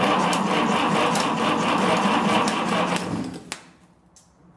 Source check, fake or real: real